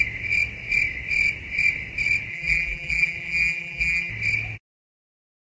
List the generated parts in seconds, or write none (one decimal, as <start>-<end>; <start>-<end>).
2.3-4.1